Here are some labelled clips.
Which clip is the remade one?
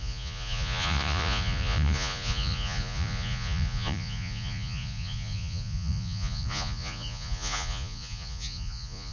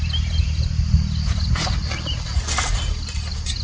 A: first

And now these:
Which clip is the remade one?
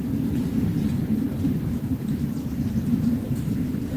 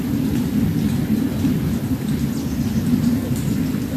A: first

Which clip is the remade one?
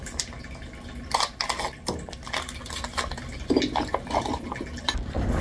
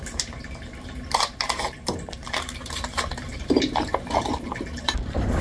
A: second